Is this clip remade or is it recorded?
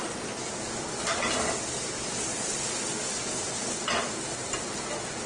recorded